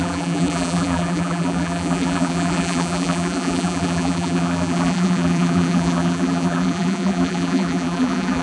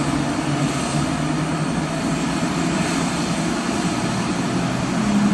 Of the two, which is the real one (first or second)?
second